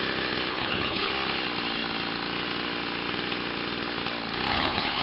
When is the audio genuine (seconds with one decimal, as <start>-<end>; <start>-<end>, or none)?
0.0-0.5; 1.1-4.5